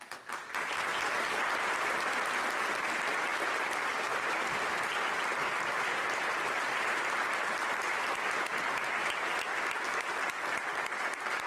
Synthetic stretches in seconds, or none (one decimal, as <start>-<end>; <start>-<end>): 3.3-4.7; 5.3-8.1